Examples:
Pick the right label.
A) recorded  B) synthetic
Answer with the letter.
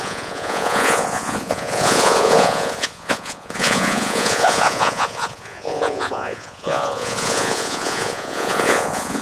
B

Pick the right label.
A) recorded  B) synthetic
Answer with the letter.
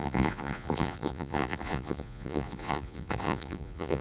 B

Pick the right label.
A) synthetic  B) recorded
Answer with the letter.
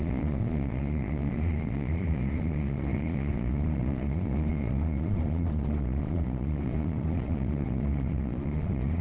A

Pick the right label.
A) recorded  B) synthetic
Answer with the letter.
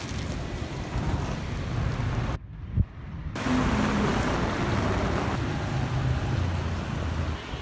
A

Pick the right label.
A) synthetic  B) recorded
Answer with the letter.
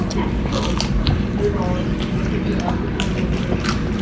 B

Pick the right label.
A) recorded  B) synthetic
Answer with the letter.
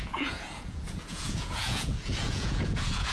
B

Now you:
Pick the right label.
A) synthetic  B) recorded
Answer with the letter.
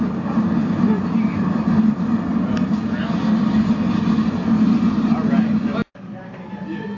B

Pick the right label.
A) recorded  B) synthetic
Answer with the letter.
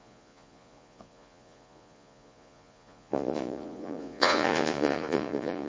B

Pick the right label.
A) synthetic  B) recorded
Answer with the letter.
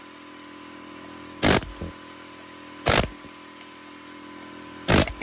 B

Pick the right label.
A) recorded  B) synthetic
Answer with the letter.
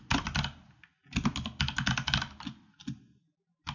A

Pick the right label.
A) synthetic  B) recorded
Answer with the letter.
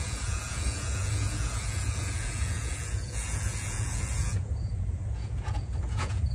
A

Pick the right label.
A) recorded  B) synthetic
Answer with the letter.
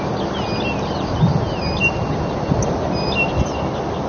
A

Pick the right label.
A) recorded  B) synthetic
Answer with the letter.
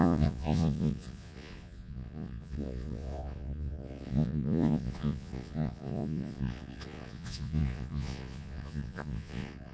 B